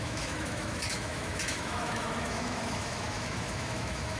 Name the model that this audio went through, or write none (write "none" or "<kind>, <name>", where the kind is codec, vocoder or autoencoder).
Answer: autoencoder, DAC-VAE